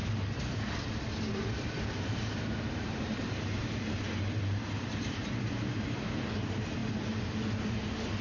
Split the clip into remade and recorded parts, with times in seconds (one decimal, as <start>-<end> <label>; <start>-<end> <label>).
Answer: 0.0-6.8 remade; 6.8-8.2 recorded